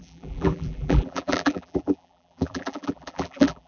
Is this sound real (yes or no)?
no